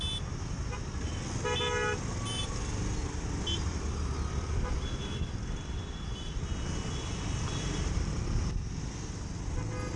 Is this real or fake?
real